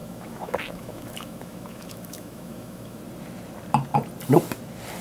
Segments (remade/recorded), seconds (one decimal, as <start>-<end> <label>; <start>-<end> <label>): 0.0-3.0 remade; 3.0-5.0 recorded